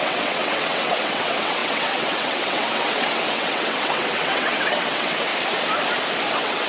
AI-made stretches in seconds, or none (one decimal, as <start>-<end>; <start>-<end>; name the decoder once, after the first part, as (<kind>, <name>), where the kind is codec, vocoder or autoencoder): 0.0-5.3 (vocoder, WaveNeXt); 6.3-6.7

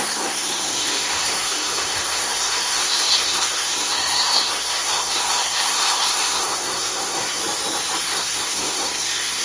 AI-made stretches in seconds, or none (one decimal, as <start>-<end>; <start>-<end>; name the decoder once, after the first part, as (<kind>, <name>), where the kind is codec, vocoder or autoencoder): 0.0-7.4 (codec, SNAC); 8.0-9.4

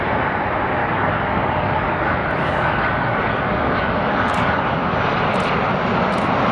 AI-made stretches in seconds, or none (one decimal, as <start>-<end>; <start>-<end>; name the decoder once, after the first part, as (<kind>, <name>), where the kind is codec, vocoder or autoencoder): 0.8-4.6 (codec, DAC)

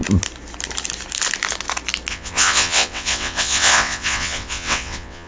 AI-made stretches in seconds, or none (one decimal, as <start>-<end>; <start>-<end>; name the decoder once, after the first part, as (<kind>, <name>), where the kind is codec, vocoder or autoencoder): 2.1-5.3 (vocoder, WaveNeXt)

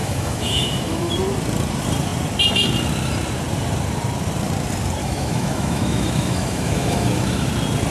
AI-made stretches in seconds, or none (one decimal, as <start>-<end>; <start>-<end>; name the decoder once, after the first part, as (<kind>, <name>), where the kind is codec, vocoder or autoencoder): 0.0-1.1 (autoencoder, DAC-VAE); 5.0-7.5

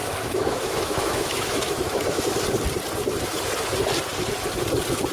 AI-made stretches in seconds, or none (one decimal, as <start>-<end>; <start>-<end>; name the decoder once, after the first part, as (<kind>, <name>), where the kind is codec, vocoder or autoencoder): 0.0-2.2 (autoencoder, DAC-VAE)

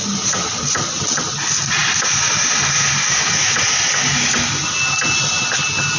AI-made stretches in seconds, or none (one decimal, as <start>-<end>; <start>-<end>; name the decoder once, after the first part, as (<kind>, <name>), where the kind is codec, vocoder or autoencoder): none